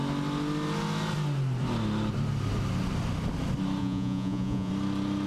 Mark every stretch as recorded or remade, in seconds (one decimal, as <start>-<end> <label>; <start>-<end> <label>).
0.0-3.8 recorded; 3.8-4.7 remade; 4.7-5.3 recorded